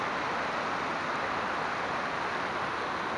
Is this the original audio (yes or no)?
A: yes